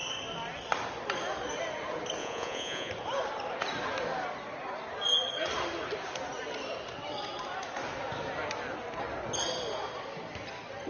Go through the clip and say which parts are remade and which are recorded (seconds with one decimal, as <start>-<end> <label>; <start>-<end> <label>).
0.0-2.2 recorded; 2.2-2.9 remade; 2.9-10.9 recorded